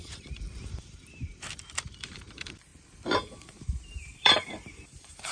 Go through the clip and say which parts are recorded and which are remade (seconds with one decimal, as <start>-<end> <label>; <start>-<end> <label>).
0.0-1.3 remade; 1.3-1.8 recorded; 1.8-2.7 remade; 2.7-3.4 recorded; 3.4-5.3 remade